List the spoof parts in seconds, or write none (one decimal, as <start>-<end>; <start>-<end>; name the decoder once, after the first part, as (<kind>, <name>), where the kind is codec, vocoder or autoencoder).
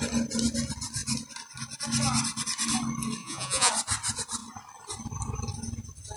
3.2-3.7 (vocoder, Vocos)